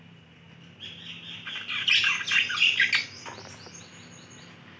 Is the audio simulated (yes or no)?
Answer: no